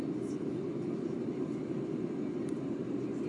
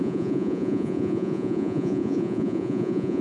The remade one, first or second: second